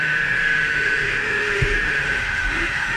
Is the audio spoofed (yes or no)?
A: yes